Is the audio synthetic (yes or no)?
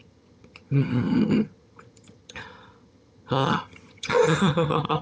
yes